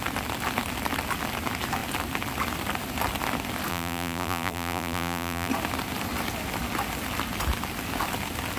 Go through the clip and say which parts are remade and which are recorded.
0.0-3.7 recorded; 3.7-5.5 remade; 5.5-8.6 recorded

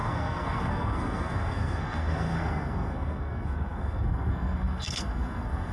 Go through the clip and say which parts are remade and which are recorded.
0.0-5.7 remade